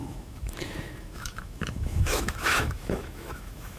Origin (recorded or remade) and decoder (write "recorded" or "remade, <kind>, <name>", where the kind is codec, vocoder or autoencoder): remade, autoencoder, DAC-VAE